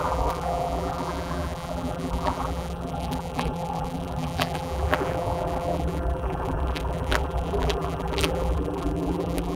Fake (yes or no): yes